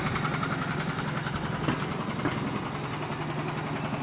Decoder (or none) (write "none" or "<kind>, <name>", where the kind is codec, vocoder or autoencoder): none